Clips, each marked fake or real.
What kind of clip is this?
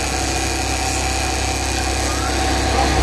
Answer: real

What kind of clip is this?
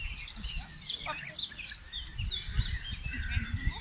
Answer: real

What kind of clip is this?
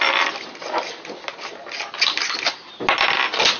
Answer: real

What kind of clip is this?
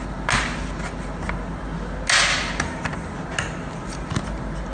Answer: real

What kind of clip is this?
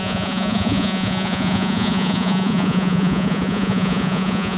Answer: fake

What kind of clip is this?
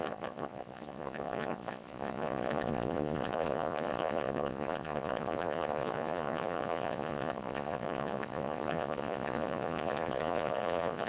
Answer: fake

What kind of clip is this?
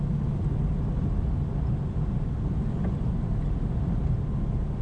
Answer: real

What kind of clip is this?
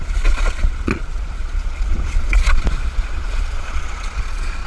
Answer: fake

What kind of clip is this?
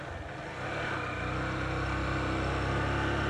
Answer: real